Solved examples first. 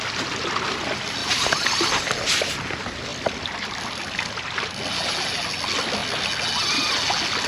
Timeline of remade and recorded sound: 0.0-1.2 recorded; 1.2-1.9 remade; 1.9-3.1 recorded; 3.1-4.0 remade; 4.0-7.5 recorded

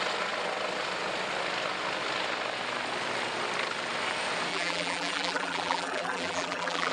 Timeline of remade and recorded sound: 0.0-4.5 recorded; 4.5-6.9 remade

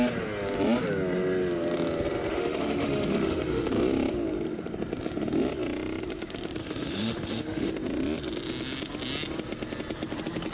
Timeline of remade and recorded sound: 0.0-2.3 recorded; 2.3-3.7 remade; 3.7-6.6 recorded; 6.6-7.7 remade; 7.7-10.5 recorded